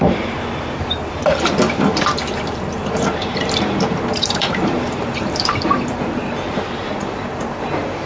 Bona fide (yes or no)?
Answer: no